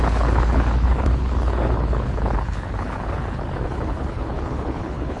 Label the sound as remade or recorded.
remade